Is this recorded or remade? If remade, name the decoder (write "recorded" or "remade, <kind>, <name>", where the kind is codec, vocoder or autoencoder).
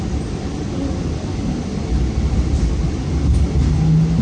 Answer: recorded